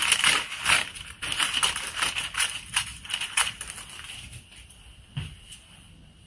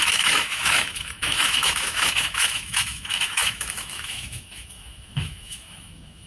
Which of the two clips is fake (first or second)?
second